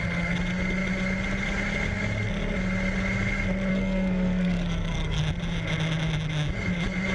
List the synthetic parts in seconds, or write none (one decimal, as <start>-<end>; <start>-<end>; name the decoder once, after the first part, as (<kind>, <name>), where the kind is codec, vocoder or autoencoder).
3.7-5.2 (codec, SNAC)